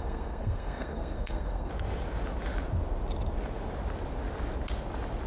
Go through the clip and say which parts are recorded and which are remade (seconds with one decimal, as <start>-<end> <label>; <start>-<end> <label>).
0.0-1.7 remade; 1.7-5.3 recorded